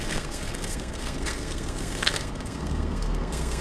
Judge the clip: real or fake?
fake